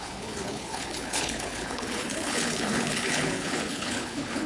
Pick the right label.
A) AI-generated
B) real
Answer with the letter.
A